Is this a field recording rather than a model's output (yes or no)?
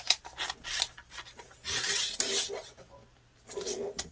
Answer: yes